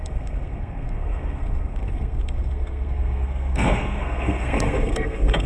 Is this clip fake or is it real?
fake